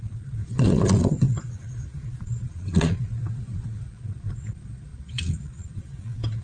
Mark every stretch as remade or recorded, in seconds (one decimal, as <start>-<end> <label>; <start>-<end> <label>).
0.0-6.4 remade